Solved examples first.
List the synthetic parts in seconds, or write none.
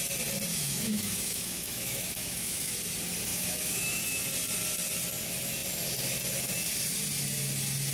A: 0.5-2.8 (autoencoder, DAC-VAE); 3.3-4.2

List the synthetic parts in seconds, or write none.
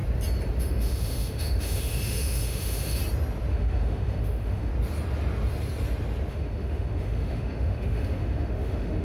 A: 0.6-3.0 (autoencoder, DAC-VAE); 3.5-4.7; 6.3-9.0